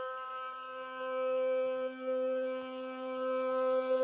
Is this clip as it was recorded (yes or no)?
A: no